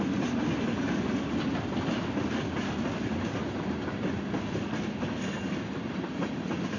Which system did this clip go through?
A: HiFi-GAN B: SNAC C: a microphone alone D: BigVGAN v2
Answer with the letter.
C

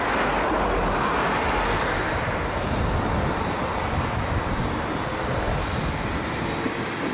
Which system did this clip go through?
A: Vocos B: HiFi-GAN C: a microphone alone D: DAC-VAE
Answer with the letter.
C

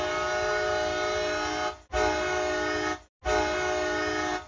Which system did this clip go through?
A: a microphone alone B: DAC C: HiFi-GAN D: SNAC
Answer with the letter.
A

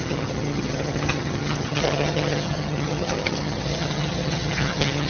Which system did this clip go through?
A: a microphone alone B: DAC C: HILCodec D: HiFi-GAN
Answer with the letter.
D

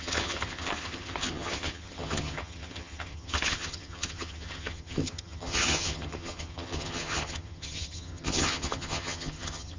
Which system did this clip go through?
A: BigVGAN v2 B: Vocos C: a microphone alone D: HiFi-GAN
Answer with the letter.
D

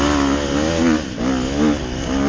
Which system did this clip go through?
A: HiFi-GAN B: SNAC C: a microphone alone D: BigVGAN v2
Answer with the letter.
C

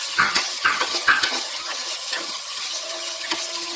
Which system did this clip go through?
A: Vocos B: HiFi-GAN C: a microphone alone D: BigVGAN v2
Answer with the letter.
B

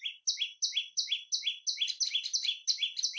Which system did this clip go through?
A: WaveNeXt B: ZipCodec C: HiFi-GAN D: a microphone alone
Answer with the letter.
D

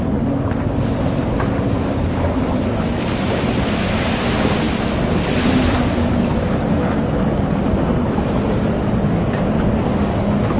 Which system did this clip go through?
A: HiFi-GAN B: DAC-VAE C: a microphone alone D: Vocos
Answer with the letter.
C